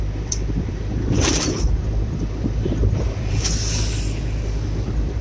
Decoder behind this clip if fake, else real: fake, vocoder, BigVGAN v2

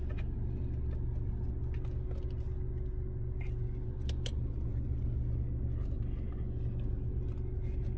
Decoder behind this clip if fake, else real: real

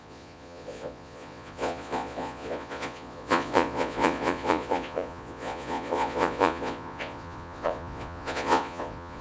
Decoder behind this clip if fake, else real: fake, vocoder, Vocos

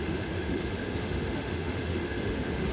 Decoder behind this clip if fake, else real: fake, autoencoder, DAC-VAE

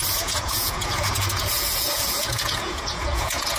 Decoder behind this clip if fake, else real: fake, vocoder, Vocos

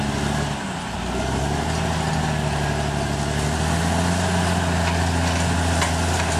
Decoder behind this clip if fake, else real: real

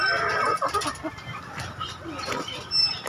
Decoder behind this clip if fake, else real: real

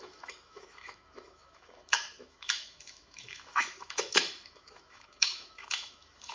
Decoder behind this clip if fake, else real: fake, autoencoder, DAC-VAE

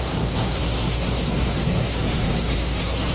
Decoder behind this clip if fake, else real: fake, codec, SNAC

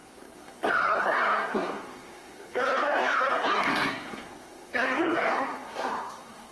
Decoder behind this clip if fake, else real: fake, codec, SNAC